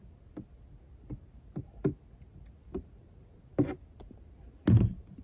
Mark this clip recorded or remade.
recorded